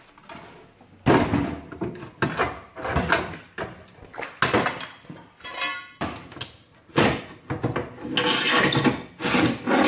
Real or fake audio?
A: real